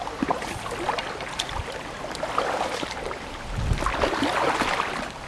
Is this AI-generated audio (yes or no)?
no